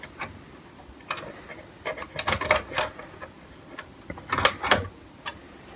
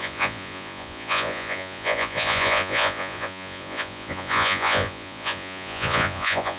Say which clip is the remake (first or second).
second